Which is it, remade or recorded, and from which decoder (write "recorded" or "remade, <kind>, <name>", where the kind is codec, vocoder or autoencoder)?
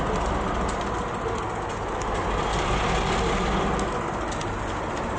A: recorded